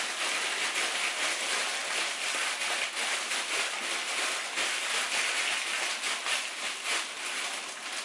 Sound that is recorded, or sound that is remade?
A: recorded